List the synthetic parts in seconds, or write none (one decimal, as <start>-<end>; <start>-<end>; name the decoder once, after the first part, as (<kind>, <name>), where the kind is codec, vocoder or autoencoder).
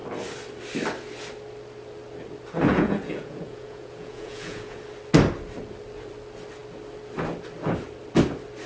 2.7-4.8 (vocoder, Vocos)